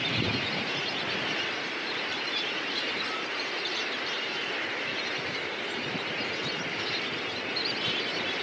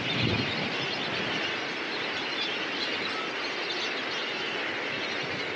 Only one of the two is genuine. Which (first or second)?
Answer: second